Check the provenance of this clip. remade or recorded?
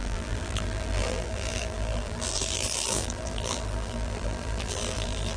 remade